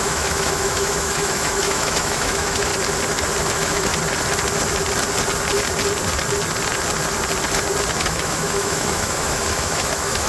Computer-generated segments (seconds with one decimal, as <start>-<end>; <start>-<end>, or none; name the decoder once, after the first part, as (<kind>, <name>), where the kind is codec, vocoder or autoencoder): 0.0-2.7 (autoencoder, DAC-VAE); 3.5-3.9; 7.9-10.3